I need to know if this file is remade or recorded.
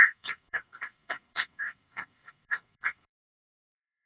remade